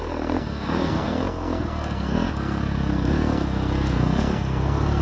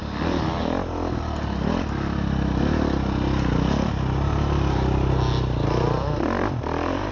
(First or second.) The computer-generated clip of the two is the first